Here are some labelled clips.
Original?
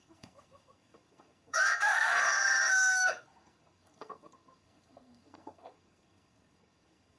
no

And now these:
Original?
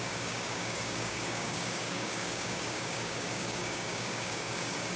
no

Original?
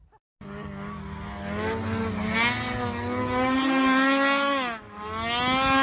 yes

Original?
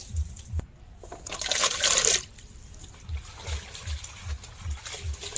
yes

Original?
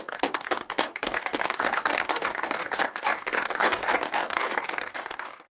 no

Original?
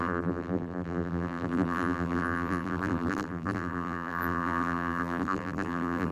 no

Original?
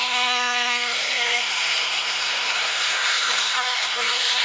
no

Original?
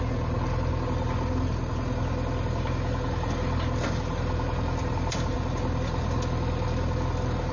yes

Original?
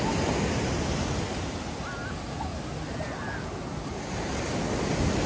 yes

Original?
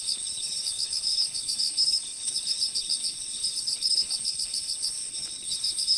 no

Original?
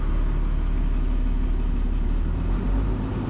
yes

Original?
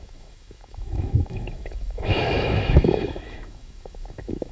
no